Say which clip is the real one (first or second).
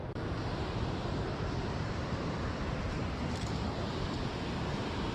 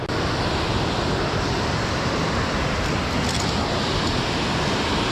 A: second